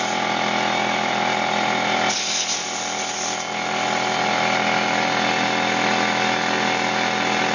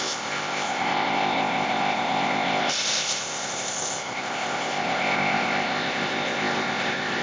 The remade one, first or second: second